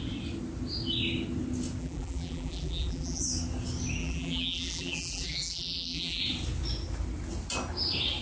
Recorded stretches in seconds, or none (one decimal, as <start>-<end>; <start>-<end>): 0.0-1.8; 3.2-4.0; 6.2-8.2